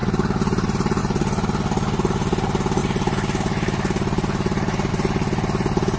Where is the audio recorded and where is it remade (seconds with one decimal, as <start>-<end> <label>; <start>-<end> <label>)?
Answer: 0.0-1.0 remade; 1.0-2.8 recorded; 2.8-4.9 remade; 4.9-6.0 recorded

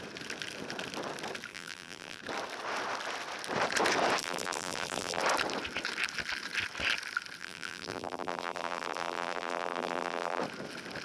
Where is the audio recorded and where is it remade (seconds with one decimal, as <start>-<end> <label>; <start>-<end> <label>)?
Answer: 0.0-1.5 recorded; 1.5-2.2 remade; 2.2-4.2 recorded; 4.2-5.2 remade; 5.2-7.4 recorded; 7.4-10.4 remade; 10.4-11.0 recorded

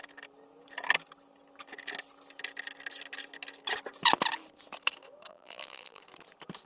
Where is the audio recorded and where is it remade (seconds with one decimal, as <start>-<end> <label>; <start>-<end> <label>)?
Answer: 0.0-5.3 recorded; 5.3-6.0 remade; 6.0-6.7 recorded

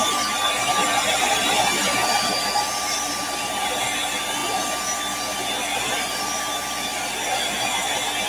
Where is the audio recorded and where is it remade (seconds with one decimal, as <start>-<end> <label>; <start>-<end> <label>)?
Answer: 0.0-3.8 remade; 3.8-6.9 recorded; 6.9-7.6 remade; 7.6-8.3 recorded